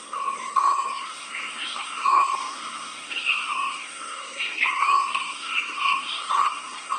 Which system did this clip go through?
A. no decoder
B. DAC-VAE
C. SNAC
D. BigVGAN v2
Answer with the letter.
C